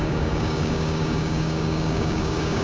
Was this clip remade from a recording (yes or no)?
yes